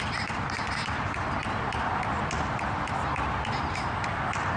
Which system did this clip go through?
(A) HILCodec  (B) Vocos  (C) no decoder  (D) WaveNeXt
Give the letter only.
C